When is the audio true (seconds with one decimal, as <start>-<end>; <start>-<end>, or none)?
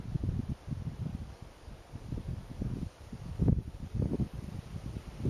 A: 0.0-1.1; 4.3-5.3